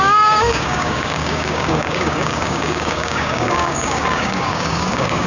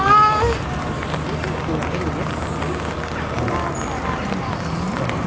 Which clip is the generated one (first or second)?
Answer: first